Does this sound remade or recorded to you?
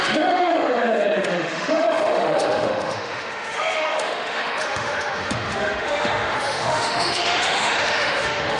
remade